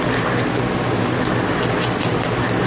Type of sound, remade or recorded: recorded